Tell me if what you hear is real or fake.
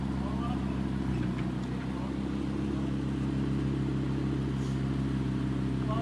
real